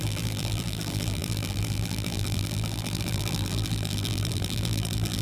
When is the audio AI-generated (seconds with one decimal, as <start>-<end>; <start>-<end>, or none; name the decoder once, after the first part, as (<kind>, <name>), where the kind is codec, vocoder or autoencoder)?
0.0-5.2 (vocoder, BigVGAN v2)